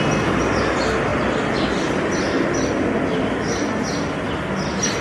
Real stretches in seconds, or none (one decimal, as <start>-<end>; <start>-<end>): 0.0-5.0